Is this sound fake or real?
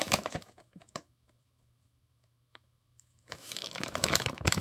fake